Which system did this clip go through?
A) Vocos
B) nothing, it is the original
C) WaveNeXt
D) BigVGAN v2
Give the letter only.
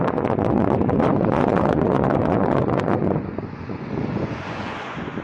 A